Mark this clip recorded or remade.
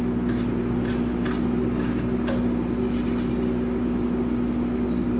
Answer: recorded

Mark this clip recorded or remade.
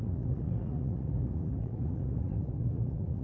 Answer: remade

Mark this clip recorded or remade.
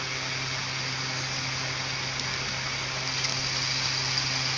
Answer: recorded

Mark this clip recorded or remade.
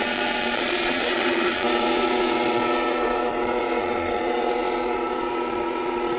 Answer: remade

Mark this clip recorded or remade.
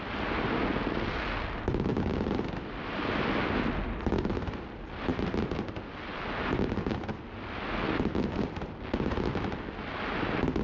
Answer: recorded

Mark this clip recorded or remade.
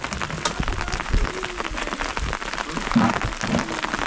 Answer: recorded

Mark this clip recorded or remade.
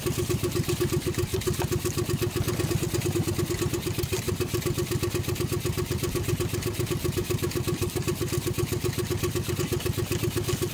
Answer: recorded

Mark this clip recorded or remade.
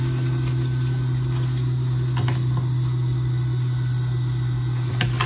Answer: recorded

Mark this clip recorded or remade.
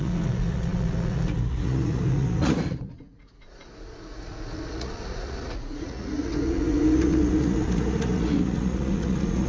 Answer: remade